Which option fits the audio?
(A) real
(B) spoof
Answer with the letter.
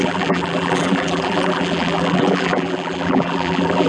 B